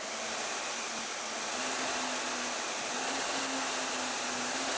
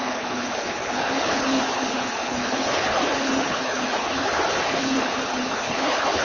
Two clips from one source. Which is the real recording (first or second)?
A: first